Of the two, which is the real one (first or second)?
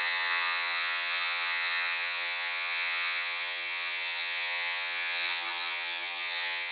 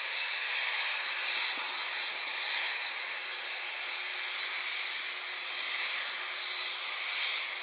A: second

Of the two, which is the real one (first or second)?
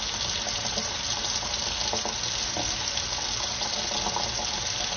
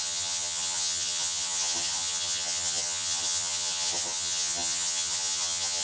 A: first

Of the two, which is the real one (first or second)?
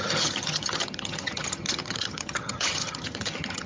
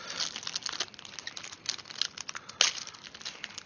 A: second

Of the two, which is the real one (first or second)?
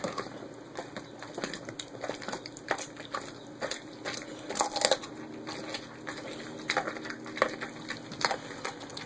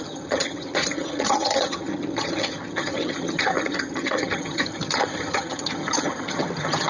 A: first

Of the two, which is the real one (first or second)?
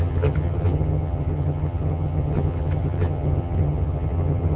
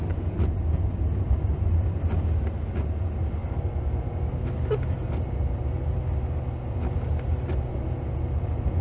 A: second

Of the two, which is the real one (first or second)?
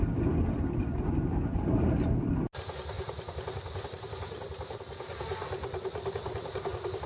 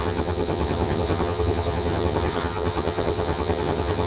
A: first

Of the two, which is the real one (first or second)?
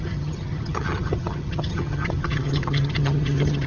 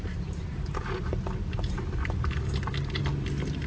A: second